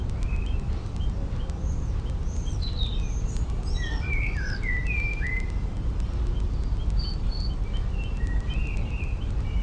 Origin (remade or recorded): recorded